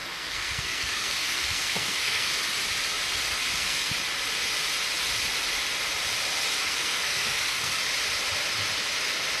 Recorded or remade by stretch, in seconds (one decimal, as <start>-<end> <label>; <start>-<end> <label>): 0.0-2.3 remade; 2.3-3.4 recorded; 3.4-3.9 remade; 3.9-6.6 recorded; 6.6-7.8 remade; 7.8-9.4 recorded